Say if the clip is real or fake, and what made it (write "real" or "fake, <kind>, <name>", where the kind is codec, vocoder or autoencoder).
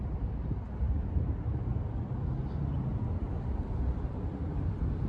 real